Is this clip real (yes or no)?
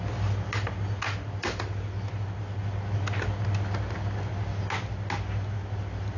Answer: yes